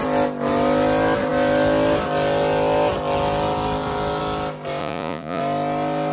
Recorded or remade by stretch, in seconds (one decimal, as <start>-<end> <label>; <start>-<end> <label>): 0.0-4.8 recorded; 4.8-5.4 remade; 5.4-6.1 recorded